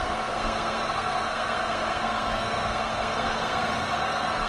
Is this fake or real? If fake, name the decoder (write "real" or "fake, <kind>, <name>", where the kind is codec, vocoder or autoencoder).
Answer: fake, codec, SNAC